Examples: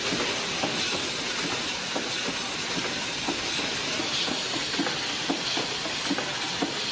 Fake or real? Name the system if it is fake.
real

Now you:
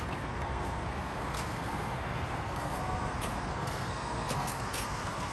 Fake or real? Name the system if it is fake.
fake, codec, SNAC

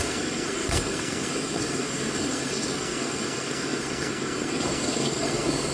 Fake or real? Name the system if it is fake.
fake, codec, SNAC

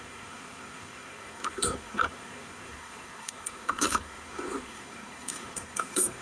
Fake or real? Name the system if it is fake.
fake, codec, SNAC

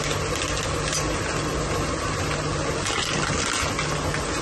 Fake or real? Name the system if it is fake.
real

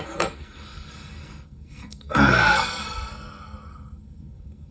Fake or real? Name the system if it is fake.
fake, codec, SNAC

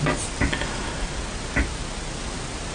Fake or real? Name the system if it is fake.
real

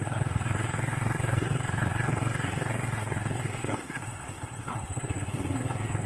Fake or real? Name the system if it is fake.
fake, codec, SNAC